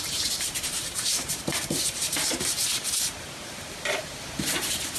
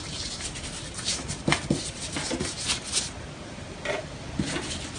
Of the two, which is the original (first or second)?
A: second